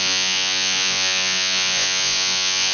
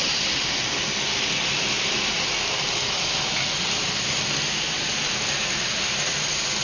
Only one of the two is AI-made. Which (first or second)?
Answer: first